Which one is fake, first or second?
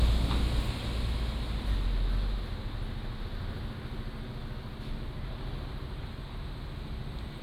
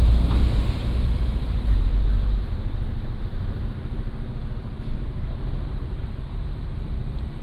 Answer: second